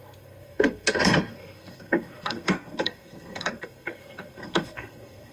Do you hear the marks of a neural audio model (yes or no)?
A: yes